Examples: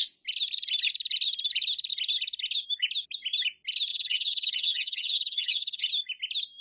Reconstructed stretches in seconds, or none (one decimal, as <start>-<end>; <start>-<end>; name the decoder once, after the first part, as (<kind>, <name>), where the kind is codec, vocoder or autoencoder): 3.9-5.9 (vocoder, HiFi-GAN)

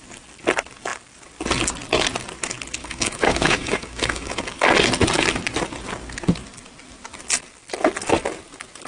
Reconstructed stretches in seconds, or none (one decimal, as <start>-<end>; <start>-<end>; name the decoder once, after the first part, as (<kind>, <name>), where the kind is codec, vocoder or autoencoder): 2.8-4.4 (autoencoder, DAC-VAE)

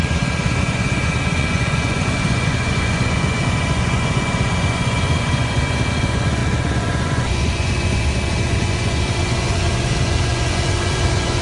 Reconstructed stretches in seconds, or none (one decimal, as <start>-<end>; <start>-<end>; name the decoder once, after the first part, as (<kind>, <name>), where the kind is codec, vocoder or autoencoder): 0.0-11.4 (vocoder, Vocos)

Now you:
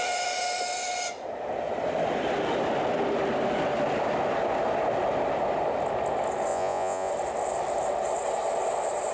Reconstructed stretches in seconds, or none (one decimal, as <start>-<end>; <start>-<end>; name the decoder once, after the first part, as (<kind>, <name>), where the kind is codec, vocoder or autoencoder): 6.5-7.1 (vocoder, Vocos)